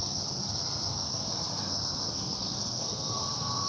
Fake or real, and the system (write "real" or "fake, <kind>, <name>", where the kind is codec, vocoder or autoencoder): fake, codec, SNAC